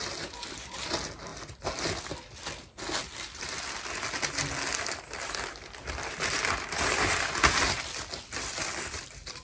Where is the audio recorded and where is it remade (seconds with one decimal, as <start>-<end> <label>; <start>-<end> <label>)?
0.0-9.4 recorded

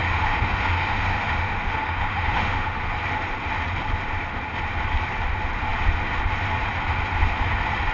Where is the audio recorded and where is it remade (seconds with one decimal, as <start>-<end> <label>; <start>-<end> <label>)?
0.0-2.9 remade; 2.9-7.9 recorded

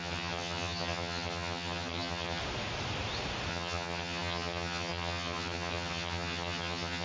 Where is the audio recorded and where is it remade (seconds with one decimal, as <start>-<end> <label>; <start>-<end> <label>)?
0.0-2.4 remade; 2.4-3.5 recorded; 3.5-7.0 remade

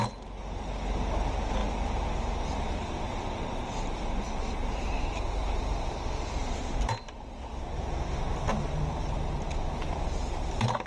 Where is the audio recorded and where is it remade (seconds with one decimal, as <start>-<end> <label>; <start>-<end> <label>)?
0.0-10.9 recorded